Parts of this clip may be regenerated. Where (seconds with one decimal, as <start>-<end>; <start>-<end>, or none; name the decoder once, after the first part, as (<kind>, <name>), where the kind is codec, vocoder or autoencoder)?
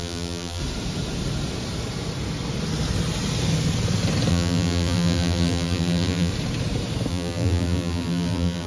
0.0-0.6 (vocoder, BigVGAN v2); 4.3-6.3; 7.1-8.7